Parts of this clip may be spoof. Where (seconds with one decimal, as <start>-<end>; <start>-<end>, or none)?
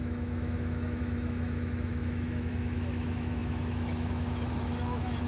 0.0-5.3